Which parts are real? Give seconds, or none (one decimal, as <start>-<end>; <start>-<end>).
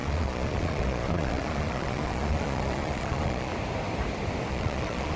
3.5-4.5